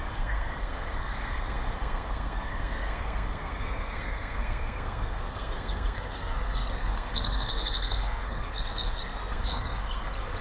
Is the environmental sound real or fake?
fake